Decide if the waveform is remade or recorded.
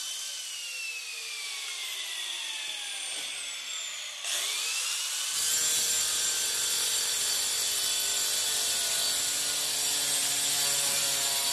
recorded